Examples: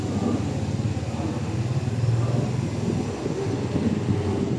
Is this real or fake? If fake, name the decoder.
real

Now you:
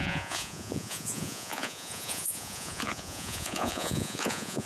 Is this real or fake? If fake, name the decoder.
fake, vocoder, Vocos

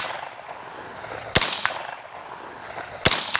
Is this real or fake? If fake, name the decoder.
real